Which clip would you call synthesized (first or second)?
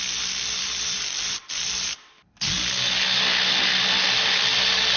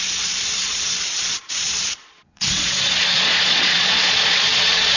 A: second